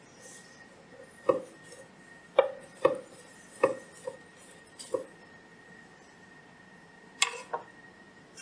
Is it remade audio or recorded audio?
recorded